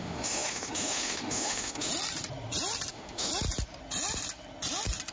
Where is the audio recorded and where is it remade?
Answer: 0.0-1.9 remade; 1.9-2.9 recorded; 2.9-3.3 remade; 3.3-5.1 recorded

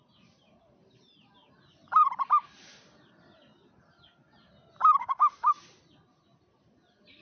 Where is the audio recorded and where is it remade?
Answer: 0.0-5.0 recorded; 5.0-5.5 remade; 5.5-7.2 recorded